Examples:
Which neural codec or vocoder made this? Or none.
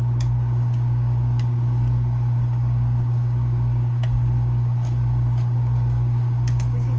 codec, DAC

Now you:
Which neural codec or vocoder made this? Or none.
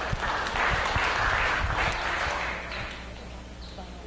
none